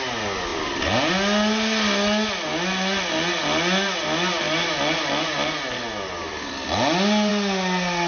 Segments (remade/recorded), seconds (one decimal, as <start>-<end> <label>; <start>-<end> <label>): 0.0-8.1 recorded